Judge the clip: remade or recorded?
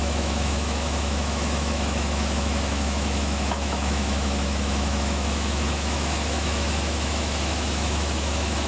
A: remade